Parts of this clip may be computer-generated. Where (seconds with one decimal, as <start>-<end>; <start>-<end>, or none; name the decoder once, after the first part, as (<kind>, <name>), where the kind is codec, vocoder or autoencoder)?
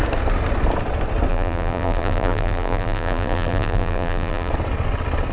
1.3-4.5 (vocoder, BigVGAN v2)